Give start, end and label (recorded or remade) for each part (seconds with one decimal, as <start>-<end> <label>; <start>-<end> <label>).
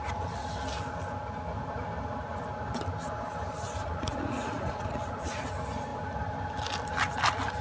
0.0-3.8 recorded; 3.8-5.5 remade; 5.5-7.6 recorded